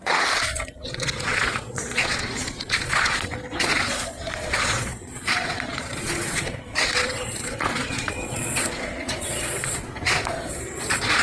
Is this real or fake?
fake